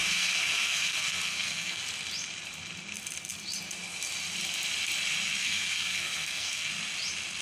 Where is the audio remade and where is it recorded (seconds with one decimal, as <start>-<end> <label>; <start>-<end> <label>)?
0.0-1.8 remade; 1.8-5.4 recorded; 5.4-6.7 remade; 6.7-7.4 recorded